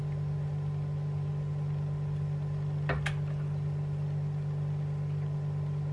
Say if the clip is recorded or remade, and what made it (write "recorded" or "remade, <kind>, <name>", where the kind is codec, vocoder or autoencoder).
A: recorded